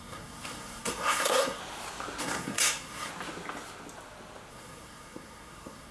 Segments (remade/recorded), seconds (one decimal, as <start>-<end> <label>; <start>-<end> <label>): 0.0-1.6 remade; 1.6-2.2 recorded; 2.2-3.1 remade; 3.1-4.5 recorded; 4.5-5.9 remade